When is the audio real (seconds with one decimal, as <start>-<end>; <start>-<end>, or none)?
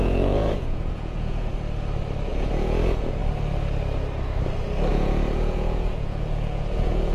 1.5-2.3; 3.2-4.9